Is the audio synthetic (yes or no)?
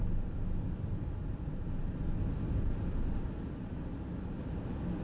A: no